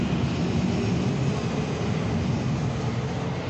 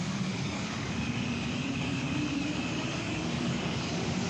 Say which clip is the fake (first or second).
second